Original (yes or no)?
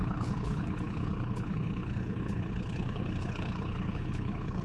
no